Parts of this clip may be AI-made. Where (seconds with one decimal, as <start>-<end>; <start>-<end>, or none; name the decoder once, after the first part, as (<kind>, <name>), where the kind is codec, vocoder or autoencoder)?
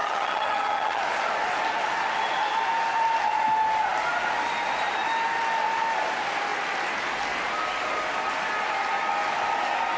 0.0-1.0 (vocoder, HiFi-GAN)